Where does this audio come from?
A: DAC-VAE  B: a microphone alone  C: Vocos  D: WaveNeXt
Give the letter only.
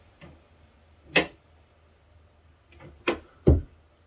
B